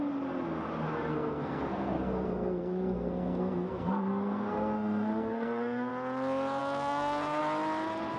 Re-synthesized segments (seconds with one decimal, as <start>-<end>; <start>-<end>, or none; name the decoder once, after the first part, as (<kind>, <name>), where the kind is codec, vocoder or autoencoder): 1.1-5.9 (codec, SNAC); 6.6-7.4